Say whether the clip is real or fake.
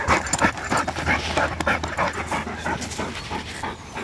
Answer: real